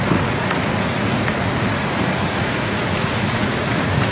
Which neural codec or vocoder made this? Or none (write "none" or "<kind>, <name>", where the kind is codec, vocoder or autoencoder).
vocoder, Vocos